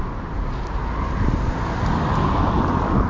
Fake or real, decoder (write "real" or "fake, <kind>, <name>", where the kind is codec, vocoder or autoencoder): real